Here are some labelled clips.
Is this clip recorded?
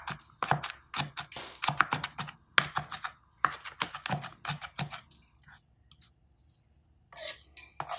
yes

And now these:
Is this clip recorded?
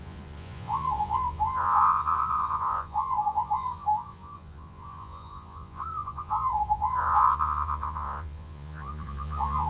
no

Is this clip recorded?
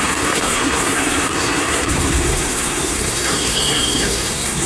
no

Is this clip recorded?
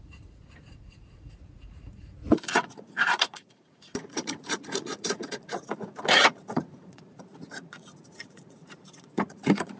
no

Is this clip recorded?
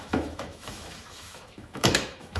no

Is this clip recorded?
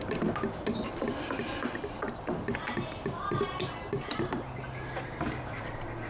yes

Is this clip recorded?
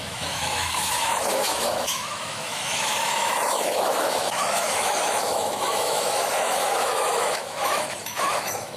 no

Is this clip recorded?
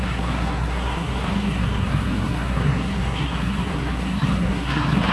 no